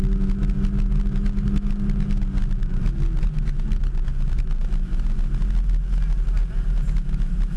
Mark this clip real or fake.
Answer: real